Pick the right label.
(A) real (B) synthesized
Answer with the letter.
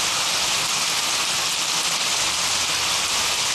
A